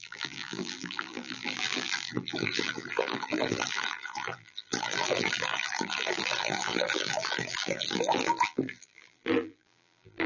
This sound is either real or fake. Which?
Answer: fake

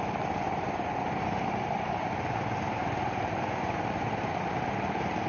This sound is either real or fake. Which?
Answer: fake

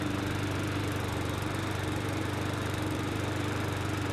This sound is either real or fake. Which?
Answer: fake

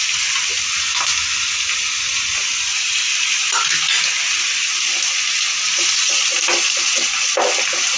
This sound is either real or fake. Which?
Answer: real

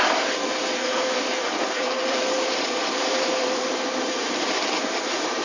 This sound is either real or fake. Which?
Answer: fake